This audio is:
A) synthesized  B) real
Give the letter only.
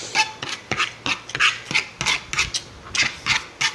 B